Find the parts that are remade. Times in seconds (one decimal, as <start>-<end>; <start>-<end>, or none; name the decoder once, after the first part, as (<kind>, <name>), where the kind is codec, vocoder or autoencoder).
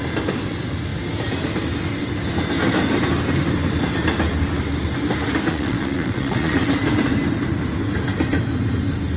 5.5-6.7 (vocoder, WaveNeXt)